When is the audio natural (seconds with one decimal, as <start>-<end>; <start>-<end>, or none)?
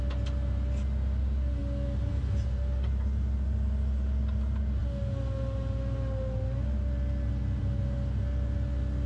0.0-9.1